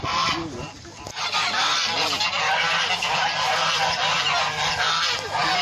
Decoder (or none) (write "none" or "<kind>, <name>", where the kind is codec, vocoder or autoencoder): none